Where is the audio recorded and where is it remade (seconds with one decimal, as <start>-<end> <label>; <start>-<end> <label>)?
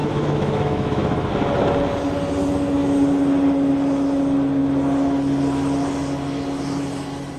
0.0-1.3 remade; 1.3-7.4 recorded